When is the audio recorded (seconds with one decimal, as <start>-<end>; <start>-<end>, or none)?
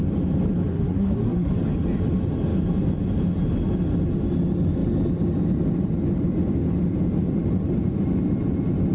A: 0.0-0.7; 1.5-8.9